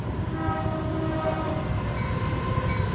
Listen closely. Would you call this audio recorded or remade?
recorded